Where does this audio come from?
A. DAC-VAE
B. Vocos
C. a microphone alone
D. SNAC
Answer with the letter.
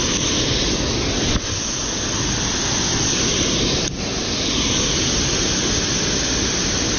C